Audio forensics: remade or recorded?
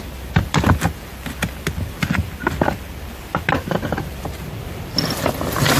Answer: remade